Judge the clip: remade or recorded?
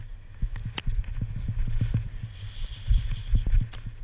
recorded